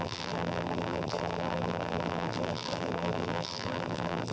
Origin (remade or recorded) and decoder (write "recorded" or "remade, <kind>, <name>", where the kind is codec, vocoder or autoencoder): remade, vocoder, BigVGAN v2